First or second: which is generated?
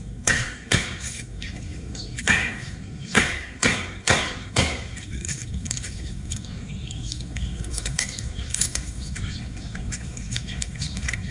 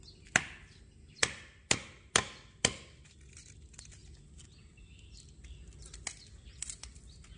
first